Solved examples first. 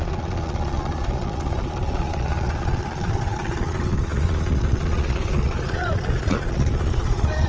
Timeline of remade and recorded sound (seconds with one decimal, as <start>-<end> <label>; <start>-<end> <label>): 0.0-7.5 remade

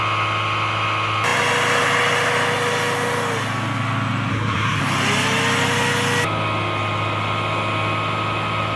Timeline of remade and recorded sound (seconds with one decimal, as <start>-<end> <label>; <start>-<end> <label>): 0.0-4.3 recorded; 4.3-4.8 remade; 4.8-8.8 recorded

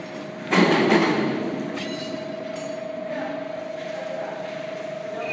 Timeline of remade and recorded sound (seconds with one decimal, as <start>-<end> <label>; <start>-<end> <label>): 0.0-5.3 recorded

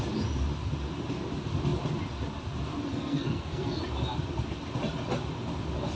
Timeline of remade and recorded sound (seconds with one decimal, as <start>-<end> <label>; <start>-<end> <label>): 0.0-2.9 recorded; 2.9-3.8 remade; 3.8-6.0 recorded

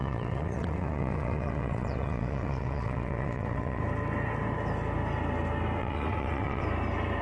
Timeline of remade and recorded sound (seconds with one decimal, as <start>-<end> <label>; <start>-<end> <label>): 0.0-3.8 remade; 3.8-5.8 recorded; 5.8-6.6 remade; 6.6-7.2 recorded